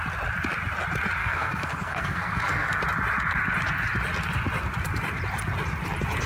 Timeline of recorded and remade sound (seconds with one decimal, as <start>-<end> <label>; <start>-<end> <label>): 0.0-1.2 recorded; 1.2-2.8 remade; 2.8-6.3 recorded